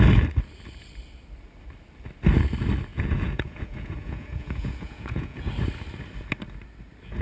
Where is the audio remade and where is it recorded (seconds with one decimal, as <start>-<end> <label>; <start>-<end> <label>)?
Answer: 0.0-2.9 recorded; 2.9-5.5 remade; 5.5-7.2 recorded